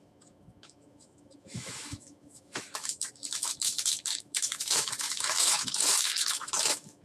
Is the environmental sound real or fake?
fake